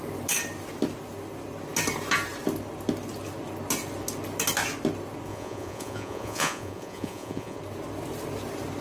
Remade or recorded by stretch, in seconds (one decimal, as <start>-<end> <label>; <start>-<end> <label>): 0.0-5.3 recorded; 5.3-7.6 remade; 7.6-8.8 recorded